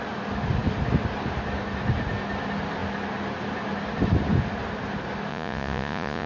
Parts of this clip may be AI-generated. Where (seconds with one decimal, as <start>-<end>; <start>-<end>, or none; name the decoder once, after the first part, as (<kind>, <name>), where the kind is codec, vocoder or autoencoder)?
5.3-6.3 (vocoder, Vocos)